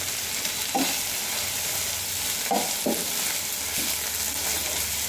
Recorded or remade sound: recorded